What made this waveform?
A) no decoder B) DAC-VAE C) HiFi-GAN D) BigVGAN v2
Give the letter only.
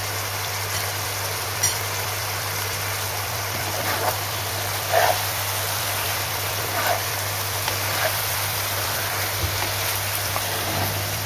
D